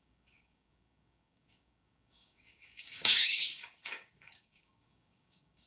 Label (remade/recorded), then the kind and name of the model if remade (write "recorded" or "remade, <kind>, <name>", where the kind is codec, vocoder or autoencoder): remade, codec, DAC